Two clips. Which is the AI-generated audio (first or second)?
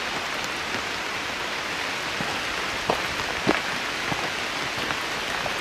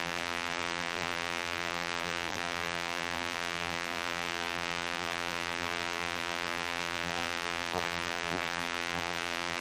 second